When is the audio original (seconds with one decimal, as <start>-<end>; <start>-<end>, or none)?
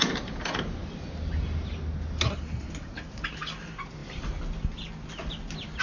0.0-5.8